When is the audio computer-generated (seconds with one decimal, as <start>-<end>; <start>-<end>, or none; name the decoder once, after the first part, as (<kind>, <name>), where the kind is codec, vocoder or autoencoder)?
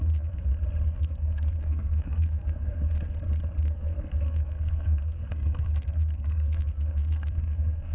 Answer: 0.0-0.5 (codec, SNAC); 1.0-2.8; 3.6-7.9